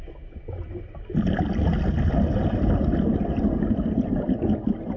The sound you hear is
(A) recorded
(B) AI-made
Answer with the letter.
A